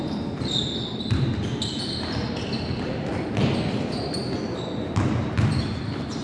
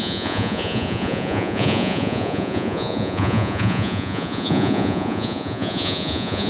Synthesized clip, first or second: second